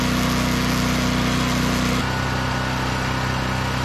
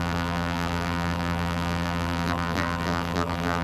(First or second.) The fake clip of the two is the second